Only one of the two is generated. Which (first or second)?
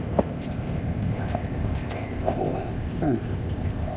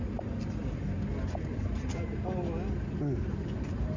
first